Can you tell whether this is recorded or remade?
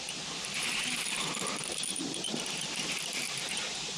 remade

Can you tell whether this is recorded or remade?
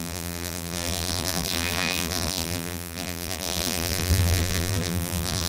remade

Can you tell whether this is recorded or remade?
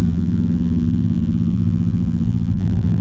remade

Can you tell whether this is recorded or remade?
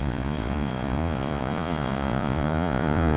remade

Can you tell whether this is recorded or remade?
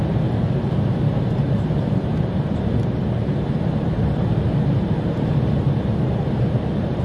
remade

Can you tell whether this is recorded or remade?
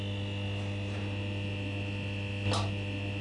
recorded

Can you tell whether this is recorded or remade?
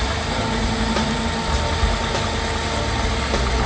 recorded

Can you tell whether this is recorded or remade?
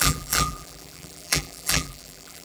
remade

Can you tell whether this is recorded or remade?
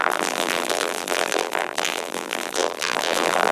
remade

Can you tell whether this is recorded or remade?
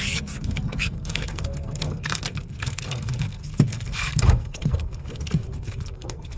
remade